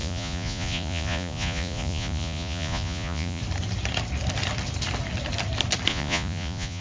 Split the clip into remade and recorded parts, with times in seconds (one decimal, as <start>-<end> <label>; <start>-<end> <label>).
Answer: 0.0-3.4 remade; 3.4-5.9 recorded; 5.9-6.8 remade